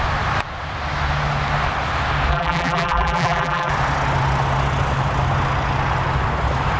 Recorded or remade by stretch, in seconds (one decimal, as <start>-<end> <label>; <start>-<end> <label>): 0.0-2.3 recorded; 2.3-3.7 remade; 3.7-6.8 recorded